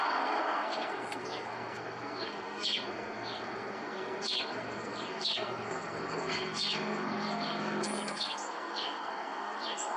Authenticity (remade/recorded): remade